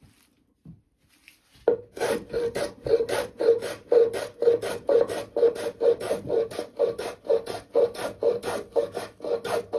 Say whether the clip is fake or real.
real